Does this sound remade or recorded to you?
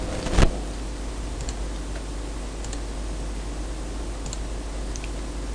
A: recorded